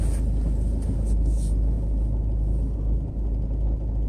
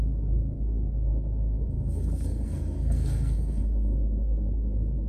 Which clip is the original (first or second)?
first